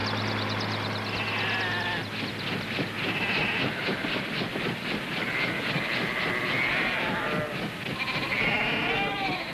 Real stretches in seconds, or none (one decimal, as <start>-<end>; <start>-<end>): 0.0-9.5